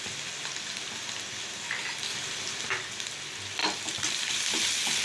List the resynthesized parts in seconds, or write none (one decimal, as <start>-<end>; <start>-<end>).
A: 2.1-2.7; 3.6-4.4